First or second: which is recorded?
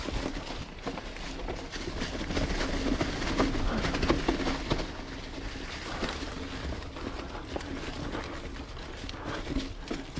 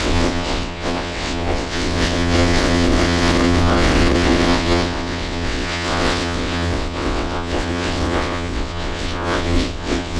first